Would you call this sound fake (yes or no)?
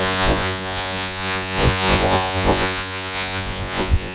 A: yes